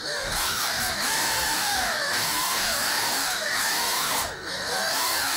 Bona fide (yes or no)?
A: no